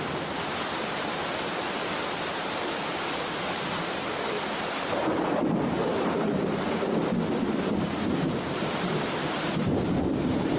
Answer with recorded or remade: remade